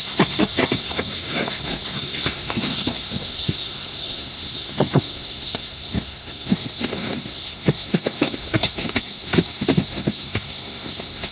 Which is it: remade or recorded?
remade